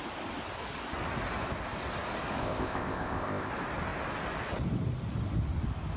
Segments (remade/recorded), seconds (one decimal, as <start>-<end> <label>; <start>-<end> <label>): 0.0-2.4 recorded; 2.4-3.5 remade; 3.5-6.0 recorded